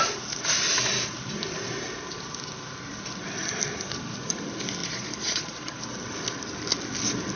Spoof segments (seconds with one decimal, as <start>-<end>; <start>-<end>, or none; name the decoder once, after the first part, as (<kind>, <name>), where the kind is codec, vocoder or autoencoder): 4.8-5.8 (vocoder, Vocos)